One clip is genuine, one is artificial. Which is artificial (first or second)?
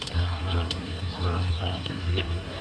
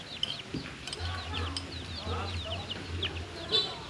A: first